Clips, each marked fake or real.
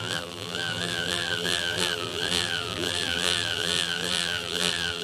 fake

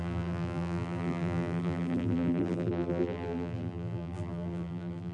fake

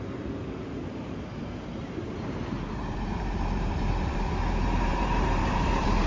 fake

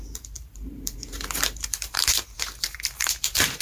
fake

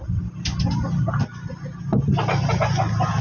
real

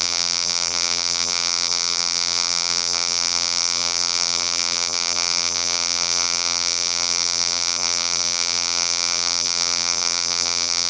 fake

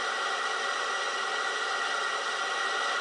real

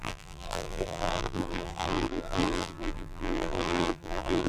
fake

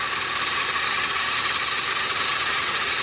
fake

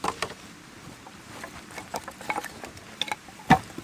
real